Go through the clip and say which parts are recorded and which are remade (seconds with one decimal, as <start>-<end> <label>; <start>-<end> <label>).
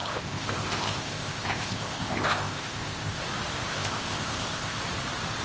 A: 0.0-3.2 remade; 3.2-3.7 recorded; 3.7-4.8 remade; 4.8-5.4 recorded